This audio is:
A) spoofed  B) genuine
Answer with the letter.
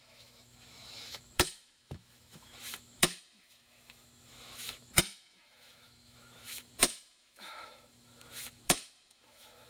A